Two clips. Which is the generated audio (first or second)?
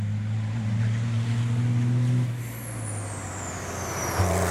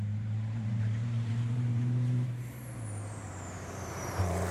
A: second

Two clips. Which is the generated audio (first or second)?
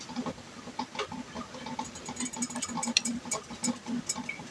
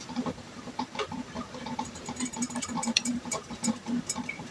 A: second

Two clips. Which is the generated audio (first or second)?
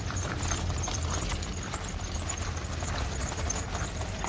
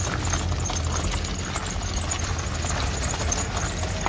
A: first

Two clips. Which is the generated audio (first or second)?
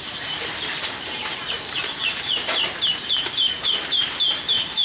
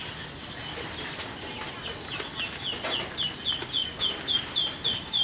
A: first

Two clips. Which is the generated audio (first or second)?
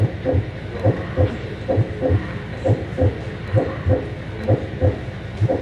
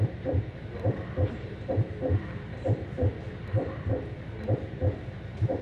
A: second